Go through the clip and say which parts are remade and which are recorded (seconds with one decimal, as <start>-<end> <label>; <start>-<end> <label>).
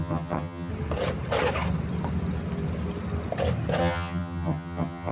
0.0-0.7 remade; 0.7-3.8 recorded; 3.8-5.1 remade